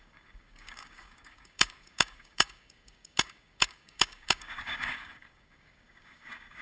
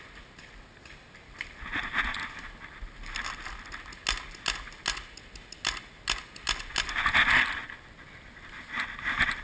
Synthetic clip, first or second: first